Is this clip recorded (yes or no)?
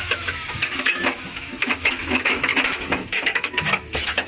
no